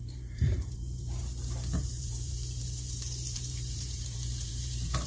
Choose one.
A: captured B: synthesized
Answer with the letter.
B